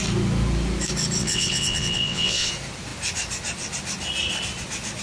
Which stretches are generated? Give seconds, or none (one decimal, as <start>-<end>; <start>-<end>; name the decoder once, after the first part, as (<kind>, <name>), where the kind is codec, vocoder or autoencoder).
1.2-2.5 (vocoder, WaveNeXt)